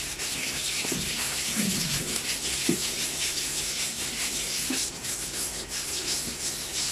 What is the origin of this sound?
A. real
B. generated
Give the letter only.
B